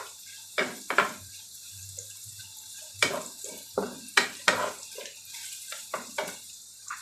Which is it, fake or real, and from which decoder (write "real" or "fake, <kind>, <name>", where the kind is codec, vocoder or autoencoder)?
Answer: fake, vocoder, BigVGAN v2